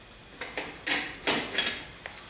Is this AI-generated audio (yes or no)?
no